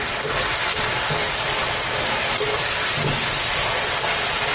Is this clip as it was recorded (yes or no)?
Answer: yes